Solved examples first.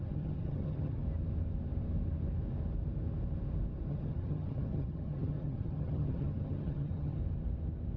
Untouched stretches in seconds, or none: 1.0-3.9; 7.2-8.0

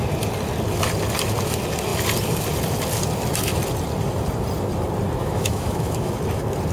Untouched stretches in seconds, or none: 0.0-5.2; 6.1-6.7

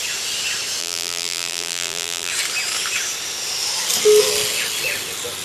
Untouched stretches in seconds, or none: 0.0-0.8; 2.3-5.4

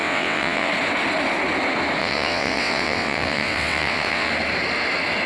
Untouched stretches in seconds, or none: 0.7-2.0; 4.3-5.3

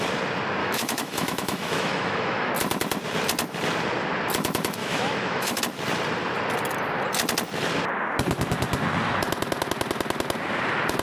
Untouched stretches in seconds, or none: 0.0-0.6; 2.5-4.8; 5.6-11.0